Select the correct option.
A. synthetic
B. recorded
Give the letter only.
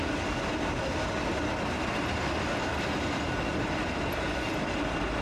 B